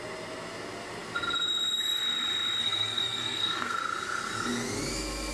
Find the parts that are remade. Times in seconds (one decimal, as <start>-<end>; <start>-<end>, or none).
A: 2.6-3.8